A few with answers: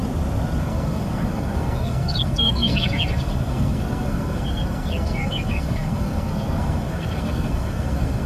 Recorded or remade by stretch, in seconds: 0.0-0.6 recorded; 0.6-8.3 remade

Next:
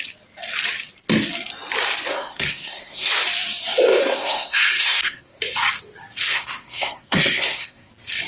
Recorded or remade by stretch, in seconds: 0.0-2.1 recorded; 2.1-3.1 remade; 3.1-4.0 recorded; 4.0-5.4 remade; 5.4-6.3 recorded; 6.3-7.9 remade; 7.9-8.3 recorded